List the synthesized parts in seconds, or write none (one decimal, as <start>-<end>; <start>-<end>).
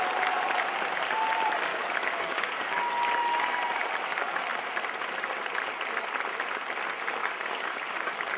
1.7-2.9; 7.2-8.4